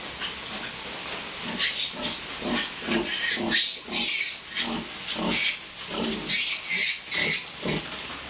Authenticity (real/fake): real